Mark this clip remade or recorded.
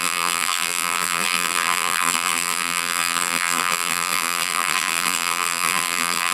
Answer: remade